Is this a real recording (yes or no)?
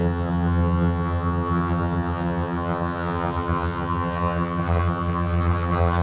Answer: no